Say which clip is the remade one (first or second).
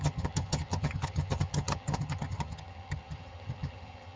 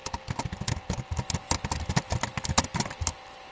first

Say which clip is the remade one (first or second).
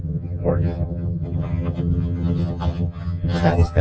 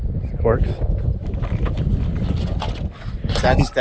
first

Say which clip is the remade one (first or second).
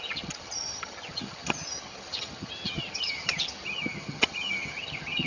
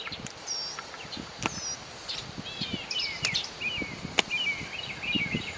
first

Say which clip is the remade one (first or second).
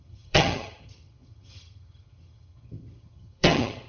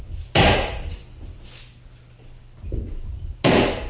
first